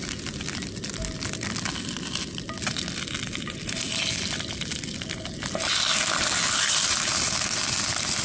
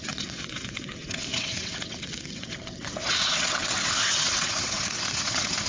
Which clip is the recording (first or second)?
first